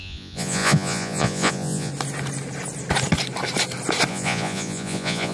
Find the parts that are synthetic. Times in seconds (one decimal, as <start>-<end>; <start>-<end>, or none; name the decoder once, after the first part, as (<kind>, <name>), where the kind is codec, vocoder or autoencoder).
0.0-1.9 (vocoder, Vocos); 4.1-5.3